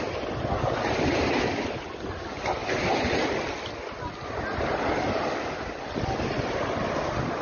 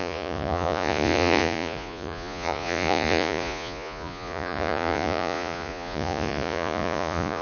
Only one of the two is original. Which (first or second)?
first